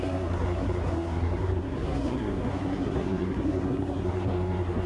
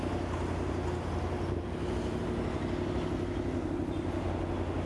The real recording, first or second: second